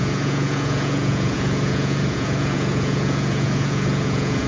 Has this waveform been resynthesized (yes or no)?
yes